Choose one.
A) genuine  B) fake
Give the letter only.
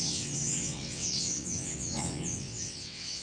B